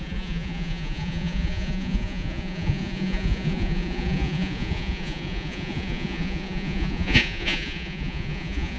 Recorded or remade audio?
remade